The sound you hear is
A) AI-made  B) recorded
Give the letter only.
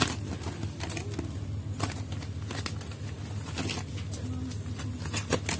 B